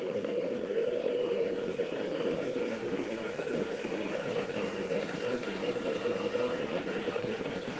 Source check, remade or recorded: remade